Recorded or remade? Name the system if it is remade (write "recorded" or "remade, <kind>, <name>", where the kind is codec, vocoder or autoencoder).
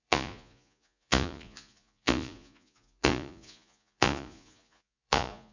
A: remade, vocoder, Vocos